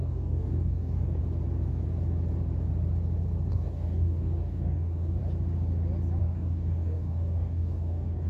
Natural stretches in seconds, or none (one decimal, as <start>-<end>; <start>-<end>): 1.2-3.5; 5.2-6.2